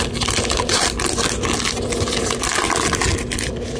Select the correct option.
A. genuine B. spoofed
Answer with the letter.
A